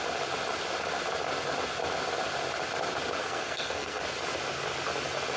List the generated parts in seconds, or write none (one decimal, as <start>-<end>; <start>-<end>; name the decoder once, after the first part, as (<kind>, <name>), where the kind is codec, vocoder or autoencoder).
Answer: 3.2-4.0 (codec, SNAC)